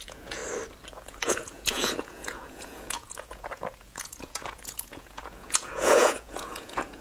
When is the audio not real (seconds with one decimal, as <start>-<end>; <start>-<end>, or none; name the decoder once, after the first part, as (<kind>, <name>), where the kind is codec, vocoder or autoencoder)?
0.0-0.4 (vocoder, Vocos); 0.9-7.0